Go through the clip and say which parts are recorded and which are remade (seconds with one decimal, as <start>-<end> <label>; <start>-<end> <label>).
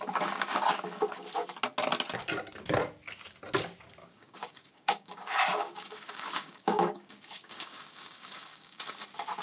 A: 0.0-4.0 recorded; 4.0-8.8 remade; 8.8-9.4 recorded